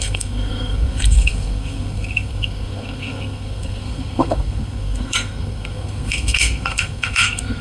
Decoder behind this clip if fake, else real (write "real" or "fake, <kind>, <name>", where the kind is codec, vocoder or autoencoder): fake, codec, SNAC